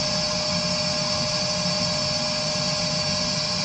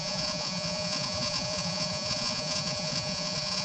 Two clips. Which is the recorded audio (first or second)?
first